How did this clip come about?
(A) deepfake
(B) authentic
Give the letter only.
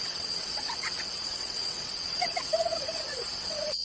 A